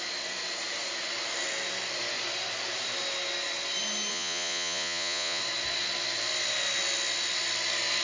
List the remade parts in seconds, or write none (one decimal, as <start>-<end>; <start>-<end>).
4.1-5.4